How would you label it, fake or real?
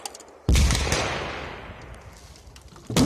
real